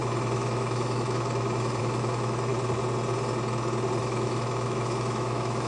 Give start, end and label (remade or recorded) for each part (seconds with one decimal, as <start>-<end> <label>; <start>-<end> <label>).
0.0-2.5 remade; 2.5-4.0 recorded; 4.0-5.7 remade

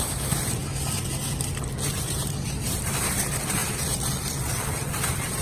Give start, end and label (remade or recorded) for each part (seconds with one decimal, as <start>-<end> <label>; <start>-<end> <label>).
0.0-0.6 remade; 0.6-1.9 recorded; 1.9-3.6 remade; 3.6-4.7 recorded; 4.7-5.4 remade

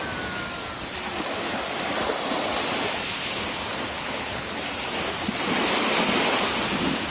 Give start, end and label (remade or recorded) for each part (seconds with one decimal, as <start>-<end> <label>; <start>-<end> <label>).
0.0-3.9 recorded; 3.9-4.5 remade; 4.5-7.1 recorded